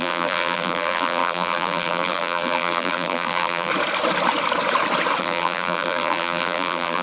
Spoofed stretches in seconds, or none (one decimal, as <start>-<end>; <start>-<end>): 0.0-3.7; 5.2-7.0